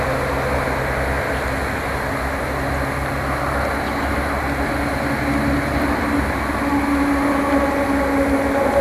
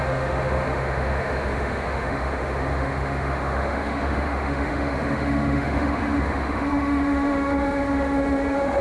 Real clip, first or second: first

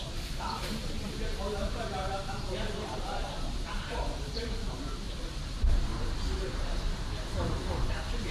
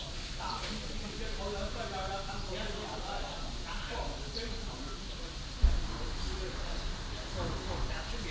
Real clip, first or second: second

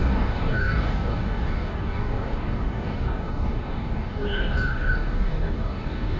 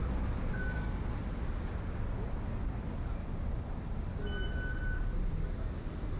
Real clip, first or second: second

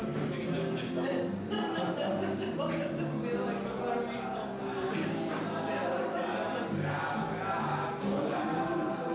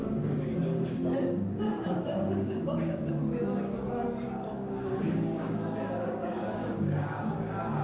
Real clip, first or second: first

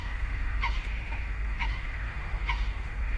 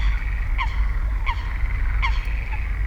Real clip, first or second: second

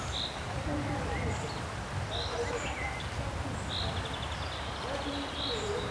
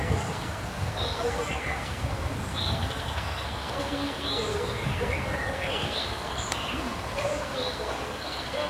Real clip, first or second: first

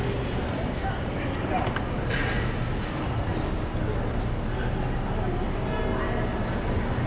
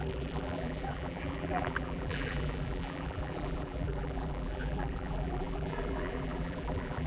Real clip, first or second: first